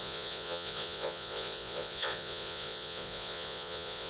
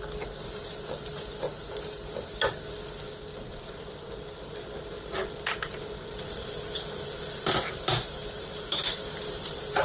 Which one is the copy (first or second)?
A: first